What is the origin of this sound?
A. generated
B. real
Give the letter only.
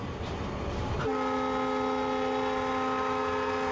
B